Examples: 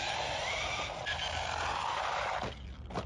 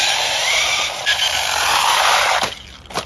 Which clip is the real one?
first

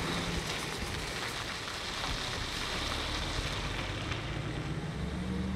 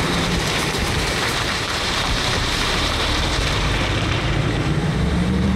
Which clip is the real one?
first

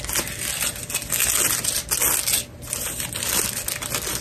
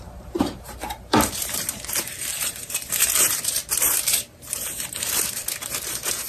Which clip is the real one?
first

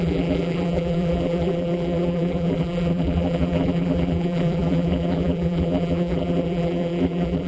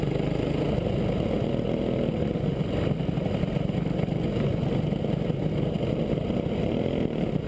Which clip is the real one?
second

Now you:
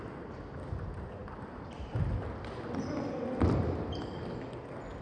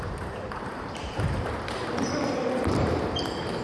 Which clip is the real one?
first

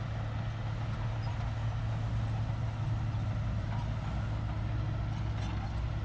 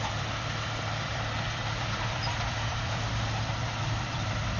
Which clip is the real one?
first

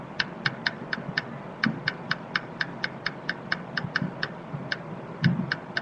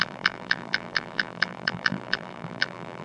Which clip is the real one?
first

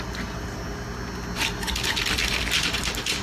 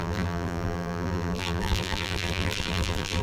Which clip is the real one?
first